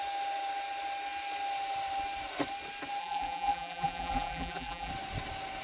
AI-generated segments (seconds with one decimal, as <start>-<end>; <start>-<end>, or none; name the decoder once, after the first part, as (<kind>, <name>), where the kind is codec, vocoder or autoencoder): 3.0-4.9 (vocoder, BigVGAN v2)